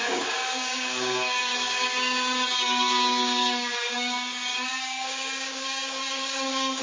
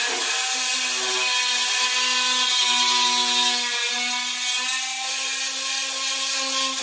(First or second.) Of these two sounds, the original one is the second